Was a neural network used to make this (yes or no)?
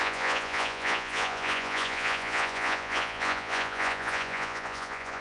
yes